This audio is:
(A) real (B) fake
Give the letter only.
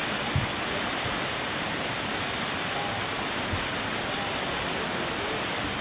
A